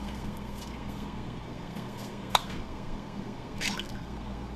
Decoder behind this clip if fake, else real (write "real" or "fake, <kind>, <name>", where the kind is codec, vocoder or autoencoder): fake, codec, SNAC